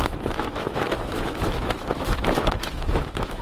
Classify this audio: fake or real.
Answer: fake